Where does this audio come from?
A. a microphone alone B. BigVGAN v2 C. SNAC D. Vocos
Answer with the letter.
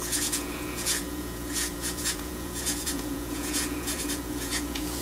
D